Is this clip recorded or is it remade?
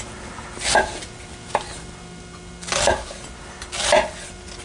recorded